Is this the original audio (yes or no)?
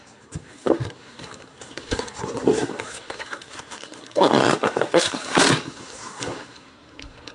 no